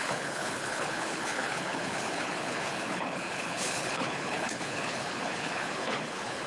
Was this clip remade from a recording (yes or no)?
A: yes